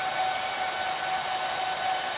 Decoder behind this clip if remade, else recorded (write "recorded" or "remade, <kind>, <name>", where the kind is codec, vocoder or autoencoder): recorded